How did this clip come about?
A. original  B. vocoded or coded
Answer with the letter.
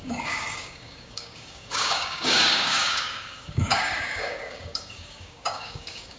B